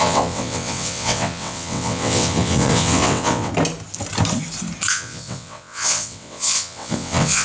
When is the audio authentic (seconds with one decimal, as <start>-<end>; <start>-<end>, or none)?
3.5-4.9